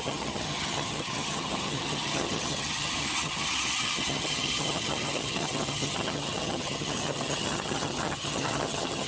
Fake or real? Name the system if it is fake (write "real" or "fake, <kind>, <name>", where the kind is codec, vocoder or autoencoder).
fake, vocoder, HiFi-GAN